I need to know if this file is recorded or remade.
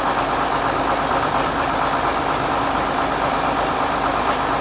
recorded